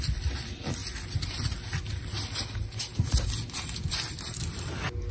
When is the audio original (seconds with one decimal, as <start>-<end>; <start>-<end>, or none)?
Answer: 0.0-5.1